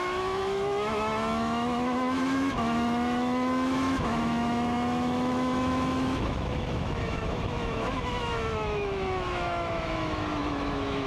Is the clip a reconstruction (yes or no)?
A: yes